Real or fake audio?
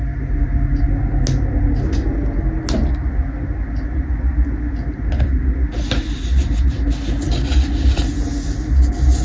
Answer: real